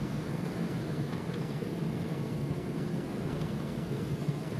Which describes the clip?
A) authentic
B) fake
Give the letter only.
B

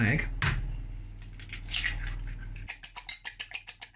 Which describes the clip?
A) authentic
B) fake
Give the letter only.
A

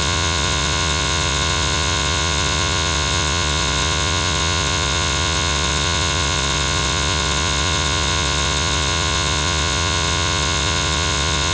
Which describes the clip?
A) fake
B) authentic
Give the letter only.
A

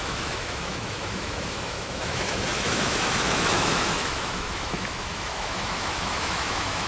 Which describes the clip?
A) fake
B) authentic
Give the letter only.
A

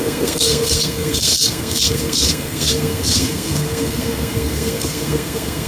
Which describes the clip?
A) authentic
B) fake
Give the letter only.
B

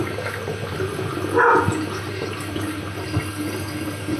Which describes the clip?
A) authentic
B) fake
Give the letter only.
A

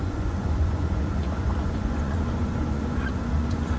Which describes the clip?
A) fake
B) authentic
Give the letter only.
A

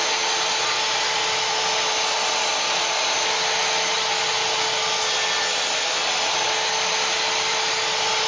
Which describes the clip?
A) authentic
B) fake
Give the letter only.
A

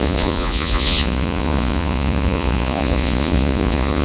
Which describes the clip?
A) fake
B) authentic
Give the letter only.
A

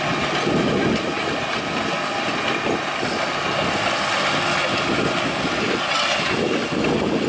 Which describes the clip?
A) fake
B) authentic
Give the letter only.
B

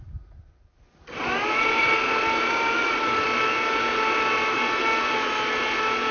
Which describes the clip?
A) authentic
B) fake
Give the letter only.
A